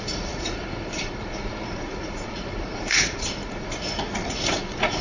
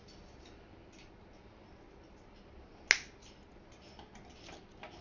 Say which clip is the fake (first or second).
first